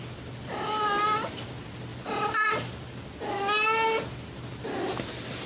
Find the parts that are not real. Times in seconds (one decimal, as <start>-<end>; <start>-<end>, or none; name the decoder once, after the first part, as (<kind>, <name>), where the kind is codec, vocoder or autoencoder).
none